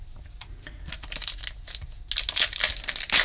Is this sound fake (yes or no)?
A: no